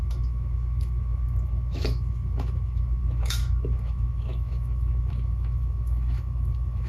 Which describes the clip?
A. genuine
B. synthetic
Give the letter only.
B